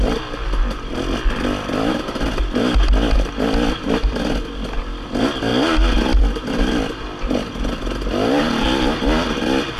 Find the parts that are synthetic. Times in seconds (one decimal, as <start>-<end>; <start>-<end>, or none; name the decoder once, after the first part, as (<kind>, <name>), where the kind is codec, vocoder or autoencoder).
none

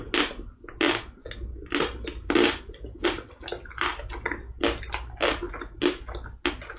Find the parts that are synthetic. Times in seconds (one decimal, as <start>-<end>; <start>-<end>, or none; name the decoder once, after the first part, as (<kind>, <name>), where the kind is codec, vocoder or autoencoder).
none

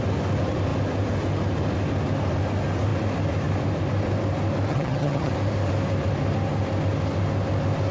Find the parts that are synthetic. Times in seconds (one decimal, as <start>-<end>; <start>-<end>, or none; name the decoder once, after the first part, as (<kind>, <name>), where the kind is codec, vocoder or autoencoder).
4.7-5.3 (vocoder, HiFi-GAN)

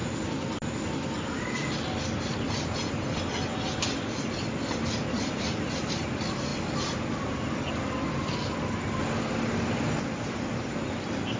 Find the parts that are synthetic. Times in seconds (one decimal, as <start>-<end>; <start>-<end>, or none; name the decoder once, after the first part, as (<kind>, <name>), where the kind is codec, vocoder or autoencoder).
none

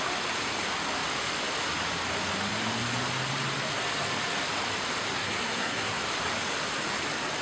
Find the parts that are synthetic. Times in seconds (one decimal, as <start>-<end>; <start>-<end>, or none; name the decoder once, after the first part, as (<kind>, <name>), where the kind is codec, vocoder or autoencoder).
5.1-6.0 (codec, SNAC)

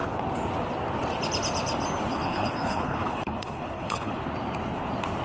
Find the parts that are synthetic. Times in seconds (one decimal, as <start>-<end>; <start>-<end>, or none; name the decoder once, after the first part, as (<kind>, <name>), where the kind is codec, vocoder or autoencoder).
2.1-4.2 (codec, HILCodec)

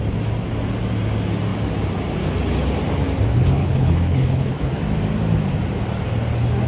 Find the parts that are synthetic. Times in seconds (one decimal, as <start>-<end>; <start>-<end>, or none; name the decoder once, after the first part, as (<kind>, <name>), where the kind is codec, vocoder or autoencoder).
3.6-4.5 (codec, HILCodec)

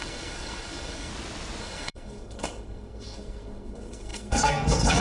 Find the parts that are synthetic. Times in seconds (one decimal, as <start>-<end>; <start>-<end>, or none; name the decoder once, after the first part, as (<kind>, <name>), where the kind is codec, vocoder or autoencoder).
0.0-1.1 (codec, SNAC); 1.6-5.0